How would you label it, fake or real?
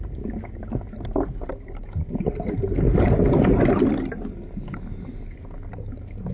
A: real